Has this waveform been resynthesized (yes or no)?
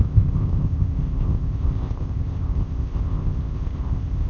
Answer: yes